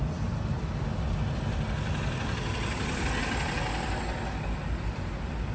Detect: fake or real real